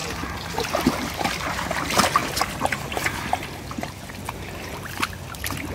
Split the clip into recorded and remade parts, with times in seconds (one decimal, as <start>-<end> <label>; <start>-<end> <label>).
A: 0.0-5.7 recorded